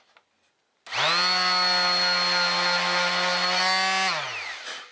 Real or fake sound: real